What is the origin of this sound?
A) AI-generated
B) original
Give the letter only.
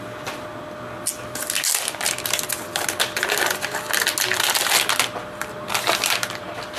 B